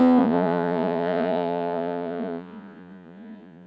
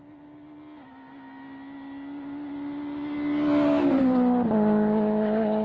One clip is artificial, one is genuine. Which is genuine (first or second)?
second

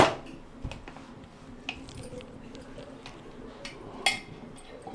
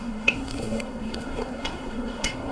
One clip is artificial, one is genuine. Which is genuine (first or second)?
first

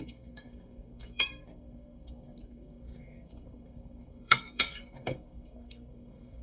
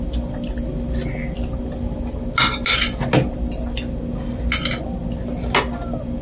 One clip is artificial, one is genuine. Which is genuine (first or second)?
second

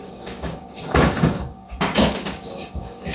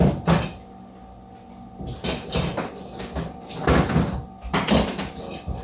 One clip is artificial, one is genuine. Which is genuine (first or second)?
second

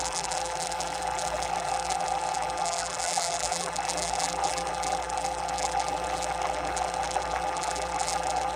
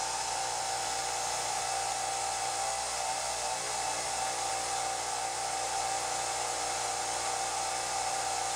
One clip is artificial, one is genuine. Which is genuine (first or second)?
second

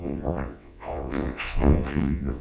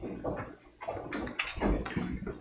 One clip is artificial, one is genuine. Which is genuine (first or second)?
second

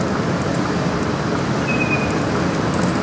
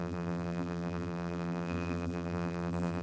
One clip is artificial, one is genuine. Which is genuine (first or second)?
first